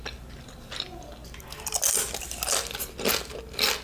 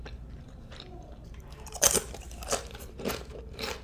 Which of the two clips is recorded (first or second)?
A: first